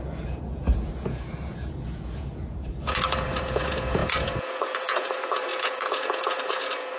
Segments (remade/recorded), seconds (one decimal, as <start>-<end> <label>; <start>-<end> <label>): 0.0-7.0 remade

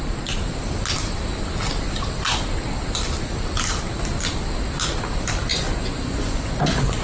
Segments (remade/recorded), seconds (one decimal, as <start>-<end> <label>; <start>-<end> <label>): 0.0-5.5 recorded; 5.5-7.0 remade

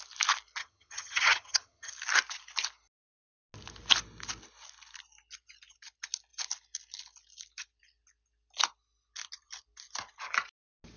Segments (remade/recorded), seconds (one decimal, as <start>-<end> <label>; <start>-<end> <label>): 0.0-0.6 recorded; 0.6-1.9 remade; 1.9-11.0 recorded

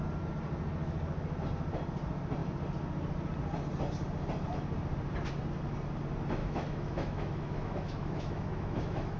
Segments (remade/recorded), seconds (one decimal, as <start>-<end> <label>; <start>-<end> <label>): 0.0-6.4 recorded; 6.4-9.2 remade

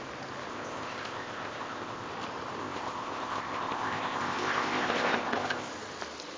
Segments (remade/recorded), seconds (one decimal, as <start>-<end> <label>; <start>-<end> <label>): 0.0-0.5 recorded; 0.5-2.1 remade; 2.1-2.6 recorded; 2.6-5.7 remade; 5.7-6.4 recorded

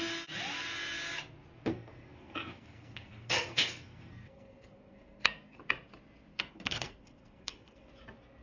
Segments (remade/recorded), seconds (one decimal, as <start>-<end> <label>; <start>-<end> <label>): 0.0-1.7 recorded; 1.7-5.6 remade; 5.6-6.3 recorded; 6.3-7.9 remade; 7.9-8.4 recorded